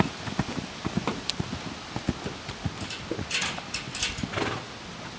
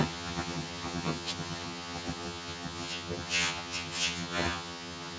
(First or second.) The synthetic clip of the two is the second